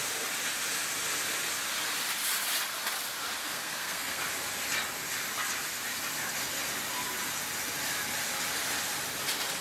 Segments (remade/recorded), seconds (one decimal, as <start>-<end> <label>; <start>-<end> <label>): 0.0-3.4 recorded; 3.4-4.2 remade; 4.2-9.6 recorded